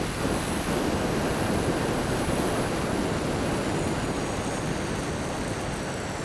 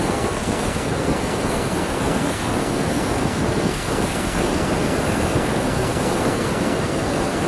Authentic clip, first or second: first